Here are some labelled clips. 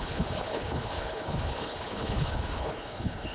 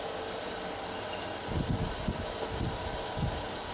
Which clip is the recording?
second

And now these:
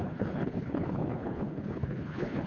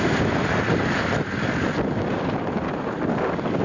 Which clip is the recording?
second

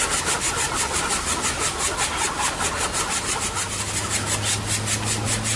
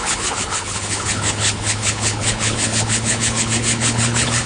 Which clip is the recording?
first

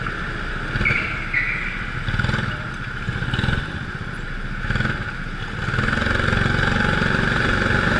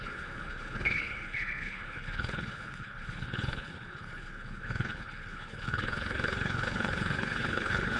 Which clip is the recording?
first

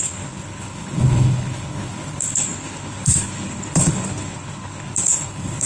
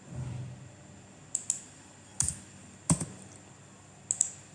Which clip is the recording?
second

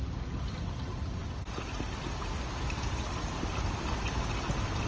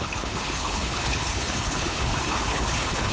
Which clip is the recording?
first